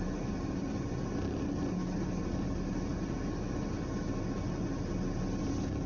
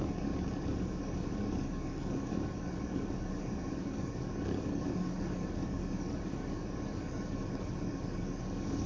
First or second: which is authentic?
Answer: first